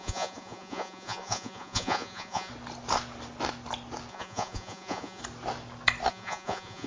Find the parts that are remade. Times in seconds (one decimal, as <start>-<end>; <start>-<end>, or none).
0.0-2.5; 4.1-5.2; 6.1-6.9